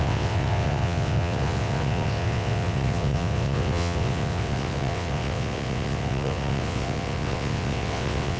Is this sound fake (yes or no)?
yes